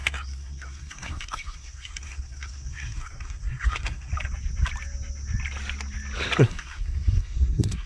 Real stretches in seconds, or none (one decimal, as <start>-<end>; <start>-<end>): 4.1-6.4